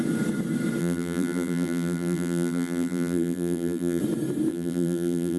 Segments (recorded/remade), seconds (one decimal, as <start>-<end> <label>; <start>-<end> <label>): 0.0-0.8 recorded; 0.8-4.0 remade; 4.0-4.5 recorded; 4.5-5.4 remade